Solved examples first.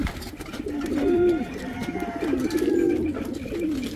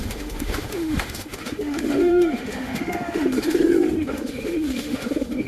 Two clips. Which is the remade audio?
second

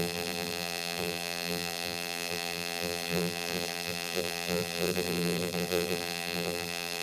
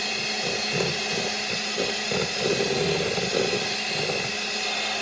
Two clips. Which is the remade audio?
first